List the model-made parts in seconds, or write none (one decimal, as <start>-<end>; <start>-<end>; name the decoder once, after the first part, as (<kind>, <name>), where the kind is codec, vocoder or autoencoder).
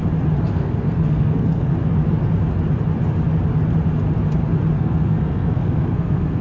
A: 0.5-1.7 (codec, SNAC); 4.8-6.4